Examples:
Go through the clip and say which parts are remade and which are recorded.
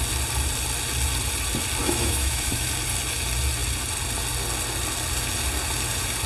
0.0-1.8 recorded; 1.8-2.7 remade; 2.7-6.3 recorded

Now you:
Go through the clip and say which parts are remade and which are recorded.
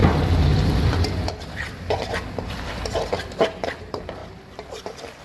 0.0-3.1 remade; 3.1-4.2 recorded; 4.2-4.8 remade; 4.8-5.2 recorded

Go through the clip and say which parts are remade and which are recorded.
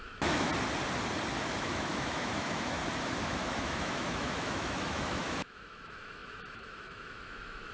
0.0-0.5 remade; 0.5-1.4 recorded; 1.4-2.8 remade; 2.8-3.3 recorded; 3.3-7.7 remade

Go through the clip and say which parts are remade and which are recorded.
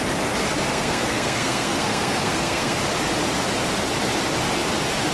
0.0-0.7 recorded; 0.7-2.8 remade; 2.8-5.1 recorded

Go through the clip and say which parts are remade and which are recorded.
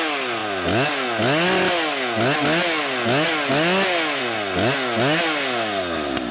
0.0-6.3 recorded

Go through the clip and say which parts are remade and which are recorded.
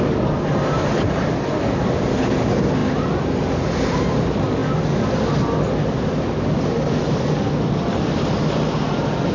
0.0-9.3 recorded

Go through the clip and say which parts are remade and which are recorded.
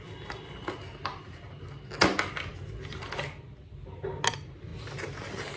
0.0-5.6 recorded